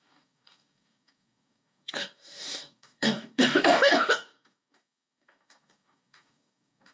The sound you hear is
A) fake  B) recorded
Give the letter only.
A